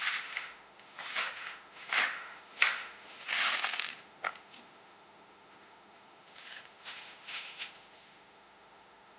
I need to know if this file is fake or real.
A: fake